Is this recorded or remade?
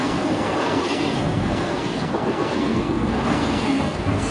remade